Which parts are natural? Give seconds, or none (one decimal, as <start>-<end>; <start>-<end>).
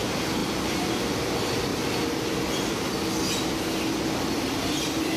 1.7-4.8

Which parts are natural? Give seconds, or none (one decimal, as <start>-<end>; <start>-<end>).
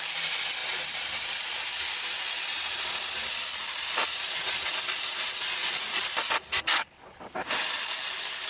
0.6-1.1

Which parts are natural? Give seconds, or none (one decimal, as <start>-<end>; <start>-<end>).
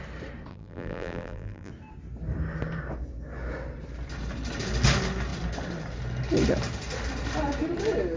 0.0-0.5; 1.7-8.2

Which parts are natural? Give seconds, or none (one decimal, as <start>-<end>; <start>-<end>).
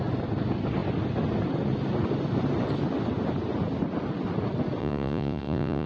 0.0-4.8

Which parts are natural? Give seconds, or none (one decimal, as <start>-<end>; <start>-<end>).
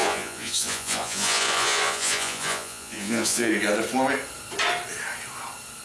3.5-5.8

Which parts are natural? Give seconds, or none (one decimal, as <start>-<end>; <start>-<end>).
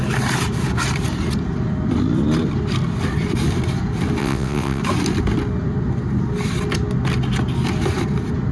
0.0-4.2; 4.8-8.5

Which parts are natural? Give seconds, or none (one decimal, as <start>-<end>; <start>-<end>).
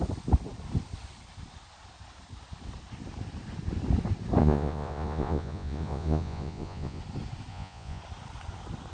0.0-4.4; 7.0-7.5; 8.0-8.9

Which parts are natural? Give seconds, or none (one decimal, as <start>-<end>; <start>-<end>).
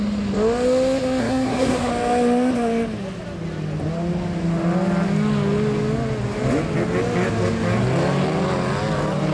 0.0-1.2; 1.9-9.3